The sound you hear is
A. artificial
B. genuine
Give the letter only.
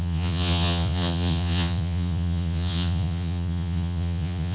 A